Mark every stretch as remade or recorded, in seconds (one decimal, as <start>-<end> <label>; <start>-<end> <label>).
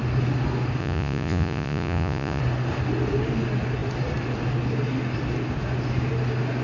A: 0.0-0.8 recorded; 0.8-2.4 remade; 2.4-6.6 recorded